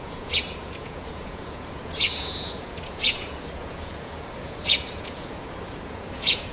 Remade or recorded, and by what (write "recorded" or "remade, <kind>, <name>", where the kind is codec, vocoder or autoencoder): remade, vocoder, Vocos